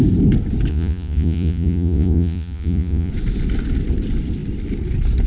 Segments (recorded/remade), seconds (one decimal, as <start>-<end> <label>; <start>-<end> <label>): 0.0-0.7 recorded; 0.7-3.1 remade; 3.1-5.3 recorded